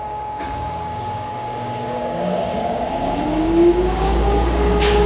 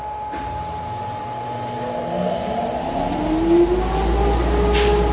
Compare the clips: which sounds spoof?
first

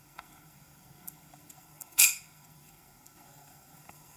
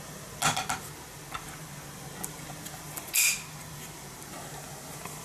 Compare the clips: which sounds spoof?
first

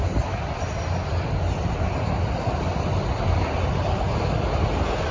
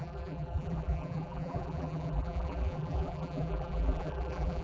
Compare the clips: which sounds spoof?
second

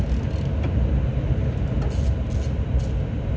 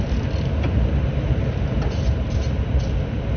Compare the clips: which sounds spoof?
second